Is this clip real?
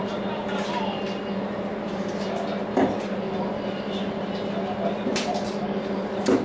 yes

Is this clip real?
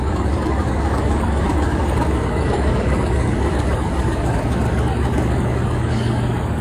no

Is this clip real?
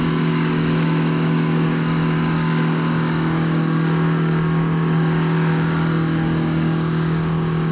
no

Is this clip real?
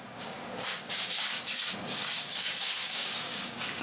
no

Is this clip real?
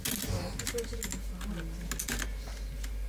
yes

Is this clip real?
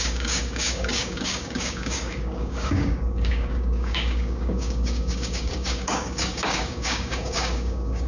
no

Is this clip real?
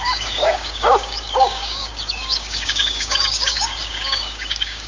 no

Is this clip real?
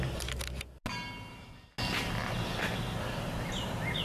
yes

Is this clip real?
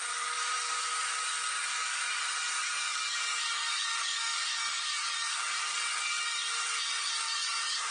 no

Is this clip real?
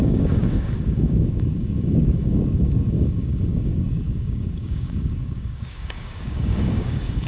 no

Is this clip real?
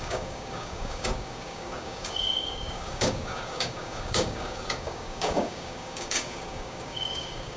no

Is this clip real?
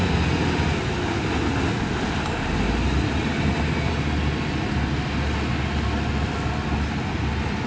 yes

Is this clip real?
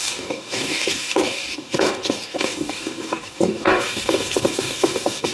no